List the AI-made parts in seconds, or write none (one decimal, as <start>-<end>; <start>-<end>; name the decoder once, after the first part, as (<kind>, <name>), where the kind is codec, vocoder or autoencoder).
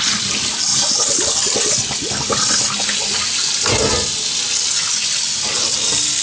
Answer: none